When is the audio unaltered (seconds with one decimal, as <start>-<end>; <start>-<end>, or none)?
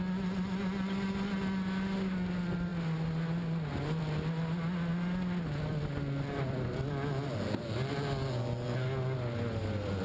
0.0-10.0